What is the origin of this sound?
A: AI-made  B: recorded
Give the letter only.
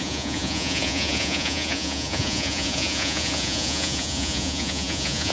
A